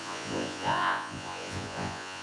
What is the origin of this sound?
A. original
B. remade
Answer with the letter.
B